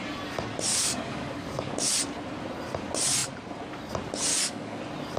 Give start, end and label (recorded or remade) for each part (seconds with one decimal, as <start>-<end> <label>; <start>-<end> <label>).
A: 0.0-0.7 recorded; 0.7-1.9 remade; 1.9-4.3 recorded; 4.3-4.8 remade; 4.8-5.2 recorded